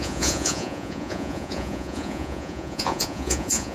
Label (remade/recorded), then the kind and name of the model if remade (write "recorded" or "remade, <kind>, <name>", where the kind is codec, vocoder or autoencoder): remade, vocoder, Vocos